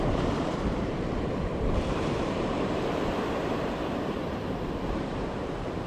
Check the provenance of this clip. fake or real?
fake